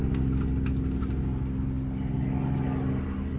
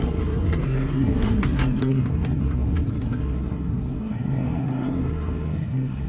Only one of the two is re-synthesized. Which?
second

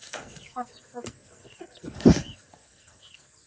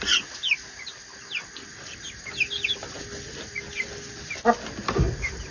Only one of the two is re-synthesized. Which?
first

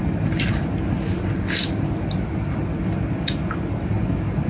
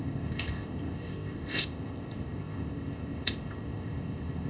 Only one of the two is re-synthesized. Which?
second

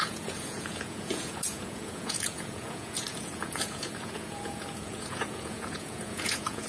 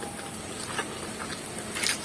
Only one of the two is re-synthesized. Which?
first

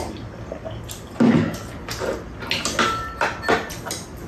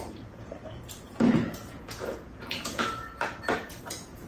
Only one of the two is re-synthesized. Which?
second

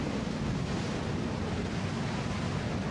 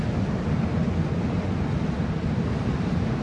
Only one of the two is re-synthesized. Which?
first